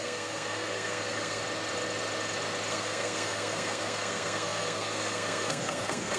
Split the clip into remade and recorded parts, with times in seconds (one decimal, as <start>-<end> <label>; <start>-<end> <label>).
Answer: 0.0-1.4 remade; 1.4-2.7 recorded; 2.7-6.2 remade